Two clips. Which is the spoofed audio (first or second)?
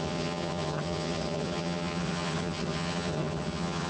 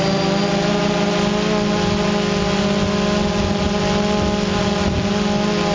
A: first